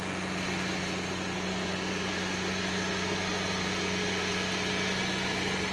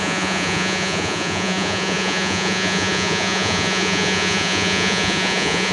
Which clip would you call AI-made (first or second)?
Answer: second